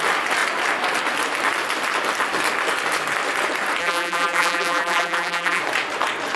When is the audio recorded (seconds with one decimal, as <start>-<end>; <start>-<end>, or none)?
0.0-3.8; 5.6-6.3